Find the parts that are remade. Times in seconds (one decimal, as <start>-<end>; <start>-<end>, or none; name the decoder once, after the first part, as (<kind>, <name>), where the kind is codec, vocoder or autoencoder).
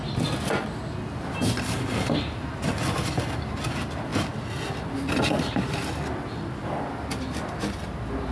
none